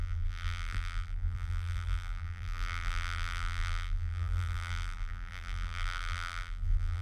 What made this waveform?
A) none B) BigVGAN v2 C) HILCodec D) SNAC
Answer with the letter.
B